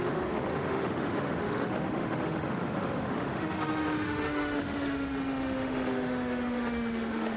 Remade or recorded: remade